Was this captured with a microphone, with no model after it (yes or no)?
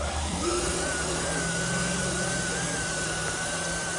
yes